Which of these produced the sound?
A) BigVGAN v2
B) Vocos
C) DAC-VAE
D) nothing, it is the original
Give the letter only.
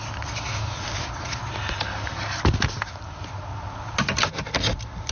D